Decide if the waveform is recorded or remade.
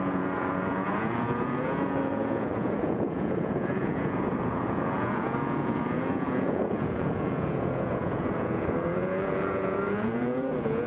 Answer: remade